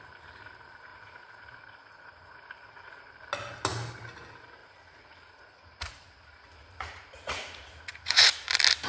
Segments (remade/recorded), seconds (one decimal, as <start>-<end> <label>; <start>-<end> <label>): 0.0-0.9 recorded; 0.9-3.1 remade; 3.1-4.6 recorded; 4.6-8.5 remade; 8.5-8.9 recorded